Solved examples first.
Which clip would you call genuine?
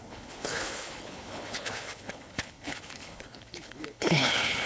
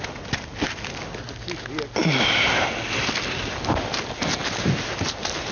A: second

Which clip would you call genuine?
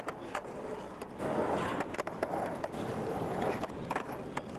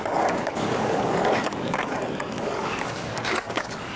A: first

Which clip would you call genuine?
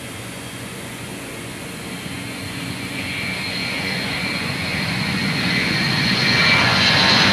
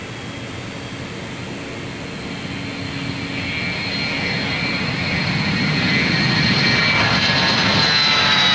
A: second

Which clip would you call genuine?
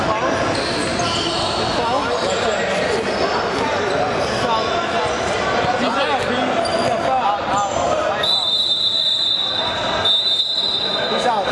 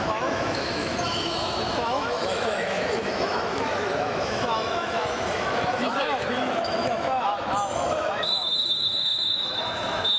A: first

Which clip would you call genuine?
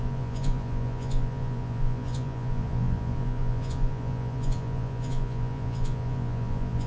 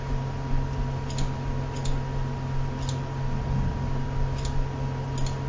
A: second